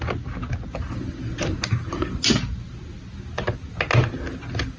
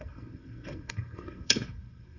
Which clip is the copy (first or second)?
second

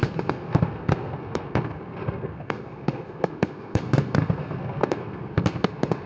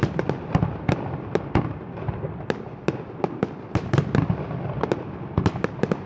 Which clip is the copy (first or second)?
first